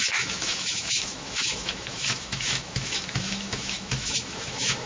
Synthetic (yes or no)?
yes